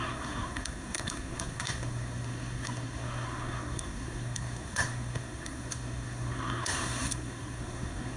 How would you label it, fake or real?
fake